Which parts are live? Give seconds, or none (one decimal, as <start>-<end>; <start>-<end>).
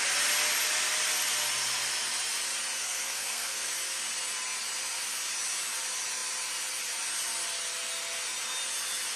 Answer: 0.0-2.8; 3.7-9.2